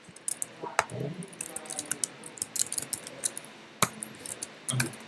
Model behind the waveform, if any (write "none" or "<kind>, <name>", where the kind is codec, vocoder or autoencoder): none